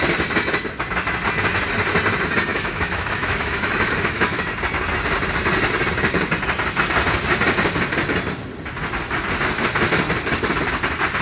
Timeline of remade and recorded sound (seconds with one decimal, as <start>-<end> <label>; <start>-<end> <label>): 0.0-2.5 recorded; 2.5-4.4 remade; 4.4-11.2 recorded